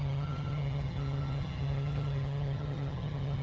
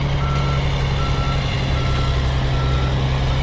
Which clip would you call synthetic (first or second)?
first